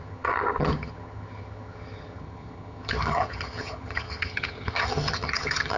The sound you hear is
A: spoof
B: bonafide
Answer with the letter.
A